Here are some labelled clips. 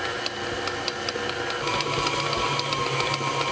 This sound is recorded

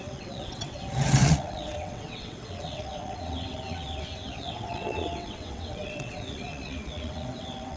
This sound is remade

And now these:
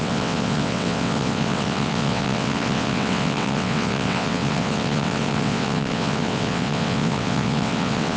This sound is remade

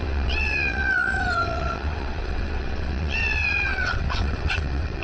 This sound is remade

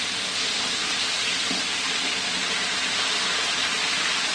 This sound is recorded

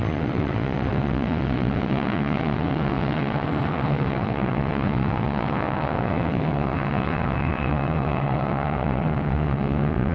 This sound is remade